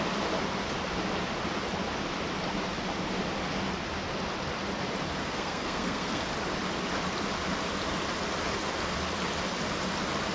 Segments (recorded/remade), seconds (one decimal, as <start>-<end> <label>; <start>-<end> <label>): 0.0-5.2 recorded; 5.2-6.2 remade; 6.2-10.3 recorded